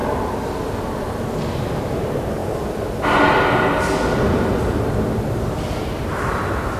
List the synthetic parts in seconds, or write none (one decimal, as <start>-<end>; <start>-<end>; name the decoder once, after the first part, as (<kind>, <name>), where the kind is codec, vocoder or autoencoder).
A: none